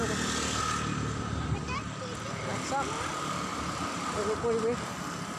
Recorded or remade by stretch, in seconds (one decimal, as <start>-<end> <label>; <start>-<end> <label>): 0.0-5.4 recorded